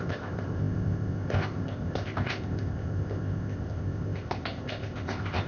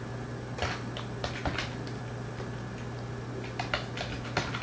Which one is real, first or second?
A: second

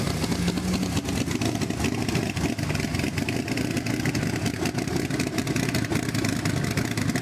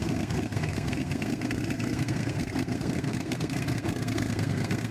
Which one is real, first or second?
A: first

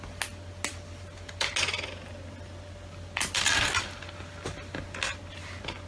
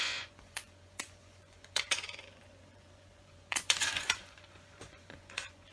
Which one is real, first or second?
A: first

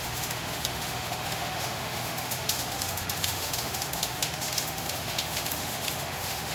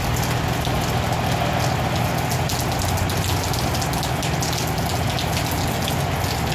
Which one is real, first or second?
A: second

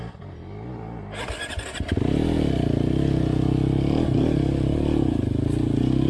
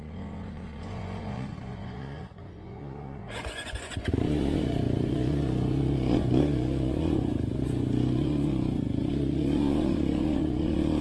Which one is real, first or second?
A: first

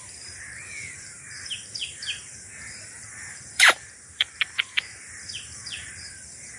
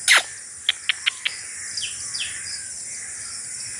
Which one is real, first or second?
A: second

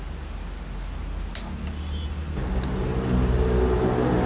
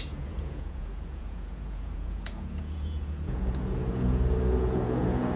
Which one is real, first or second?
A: first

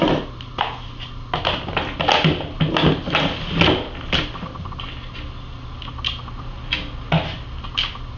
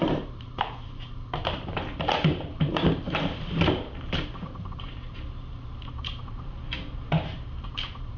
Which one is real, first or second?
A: first